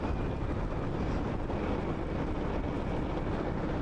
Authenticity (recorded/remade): recorded